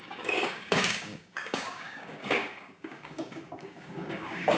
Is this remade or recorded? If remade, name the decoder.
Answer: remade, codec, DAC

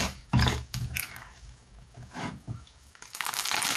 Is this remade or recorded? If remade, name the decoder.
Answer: remade, codec, DAC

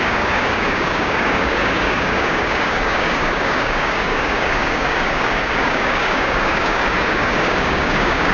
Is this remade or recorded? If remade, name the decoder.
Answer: remade, codec, DAC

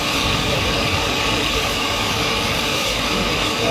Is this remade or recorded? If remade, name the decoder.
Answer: remade, codec, DAC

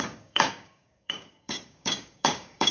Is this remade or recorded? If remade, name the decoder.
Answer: remade, codec, DAC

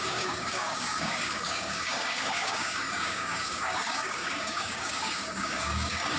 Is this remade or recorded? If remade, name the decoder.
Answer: remade, codec, DAC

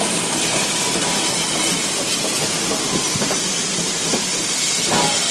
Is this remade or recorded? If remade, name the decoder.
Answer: recorded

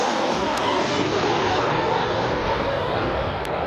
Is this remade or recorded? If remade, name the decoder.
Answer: remade, codec, DAC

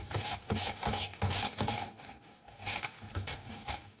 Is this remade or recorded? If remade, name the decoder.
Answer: remade, codec, DAC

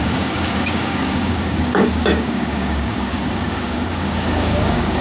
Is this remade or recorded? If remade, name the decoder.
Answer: remade, codec, DAC